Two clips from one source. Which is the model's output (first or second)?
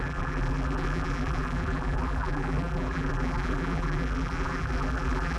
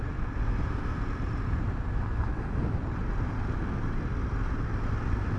first